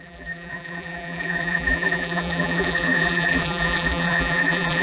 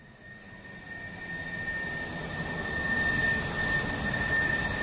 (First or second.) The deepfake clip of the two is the first